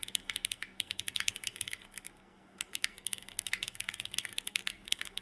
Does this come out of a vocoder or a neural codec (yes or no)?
yes